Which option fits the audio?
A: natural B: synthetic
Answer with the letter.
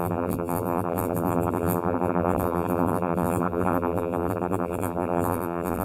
B